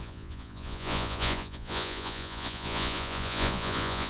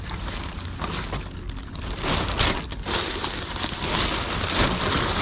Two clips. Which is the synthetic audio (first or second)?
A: first